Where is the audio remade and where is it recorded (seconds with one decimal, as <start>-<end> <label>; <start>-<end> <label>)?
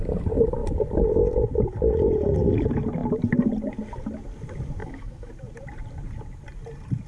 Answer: 0.0-4.8 recorded; 4.8-5.3 remade; 5.3-7.1 recorded